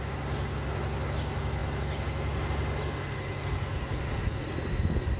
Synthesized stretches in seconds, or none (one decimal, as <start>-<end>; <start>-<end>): none